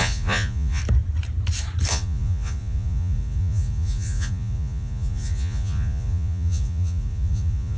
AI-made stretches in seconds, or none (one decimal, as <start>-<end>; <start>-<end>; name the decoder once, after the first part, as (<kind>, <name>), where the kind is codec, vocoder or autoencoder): 0.0-0.8 (vocoder, Vocos); 1.9-7.8